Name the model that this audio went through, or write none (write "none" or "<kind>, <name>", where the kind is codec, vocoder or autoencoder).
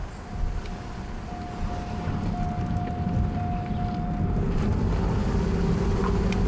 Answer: none